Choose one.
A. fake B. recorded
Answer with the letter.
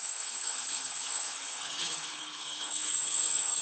A